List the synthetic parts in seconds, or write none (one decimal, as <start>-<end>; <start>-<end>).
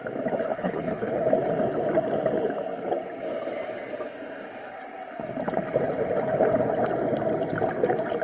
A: 0.5-1.3